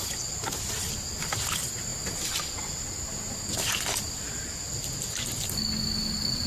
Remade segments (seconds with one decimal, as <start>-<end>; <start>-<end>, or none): none